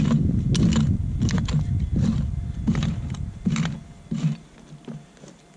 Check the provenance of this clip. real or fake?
real